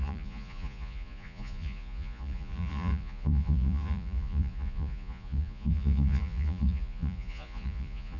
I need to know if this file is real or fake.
fake